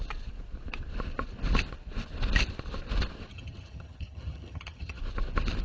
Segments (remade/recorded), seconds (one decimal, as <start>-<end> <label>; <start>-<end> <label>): 0.0-3.3 recorded; 3.3-5.0 remade; 5.0-5.6 recorded